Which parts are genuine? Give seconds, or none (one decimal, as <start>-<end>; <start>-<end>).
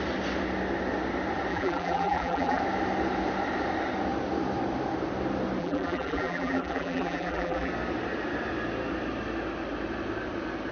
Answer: 0.0-1.5; 2.6-5.6; 7.7-10.7